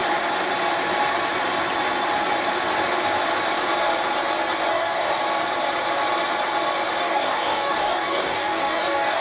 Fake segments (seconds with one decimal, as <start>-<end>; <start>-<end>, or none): 4.7-5.2; 7.0-9.2